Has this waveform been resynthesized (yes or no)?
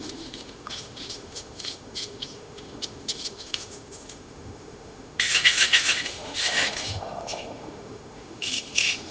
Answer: yes